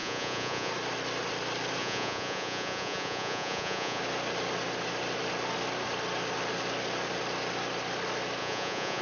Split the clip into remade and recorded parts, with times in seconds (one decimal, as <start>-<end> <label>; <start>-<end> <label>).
0.0-0.7 remade; 0.7-1.8 recorded; 1.8-4.0 remade; 4.0-8.4 recorded; 8.4-9.0 remade